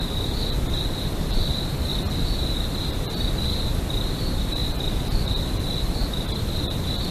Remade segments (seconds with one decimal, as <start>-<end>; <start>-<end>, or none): 0.0-1.9; 4.1-7.1